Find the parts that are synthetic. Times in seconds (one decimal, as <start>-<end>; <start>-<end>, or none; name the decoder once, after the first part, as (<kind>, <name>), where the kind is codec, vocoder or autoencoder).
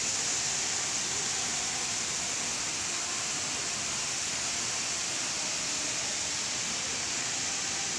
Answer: none